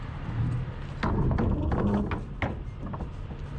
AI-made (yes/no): no